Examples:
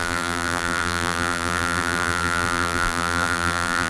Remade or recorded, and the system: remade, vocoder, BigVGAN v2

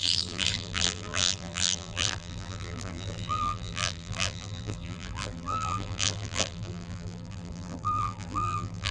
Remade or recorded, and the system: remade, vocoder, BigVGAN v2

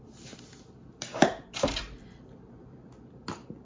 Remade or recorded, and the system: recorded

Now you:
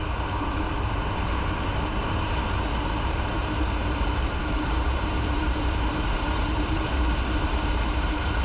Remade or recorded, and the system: remade, vocoder, BigVGAN v2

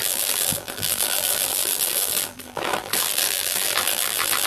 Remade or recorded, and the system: remade, vocoder, BigVGAN v2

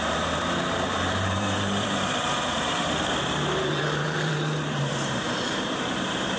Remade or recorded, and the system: remade, vocoder, BigVGAN v2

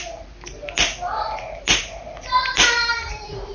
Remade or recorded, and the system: remade, vocoder, BigVGAN v2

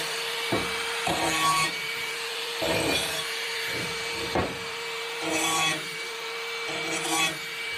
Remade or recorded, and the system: remade, vocoder, BigVGAN v2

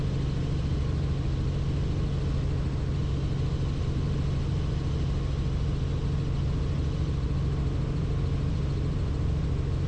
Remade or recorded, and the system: recorded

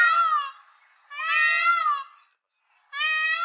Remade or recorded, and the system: recorded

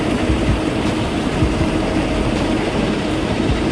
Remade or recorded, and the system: remade, vocoder, BigVGAN v2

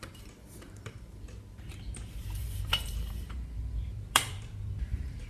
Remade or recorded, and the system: remade, vocoder, BigVGAN v2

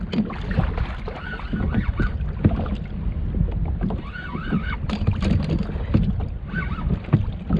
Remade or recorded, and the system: recorded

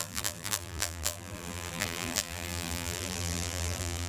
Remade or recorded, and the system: remade, vocoder, BigVGAN v2